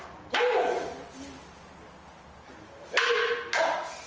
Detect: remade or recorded recorded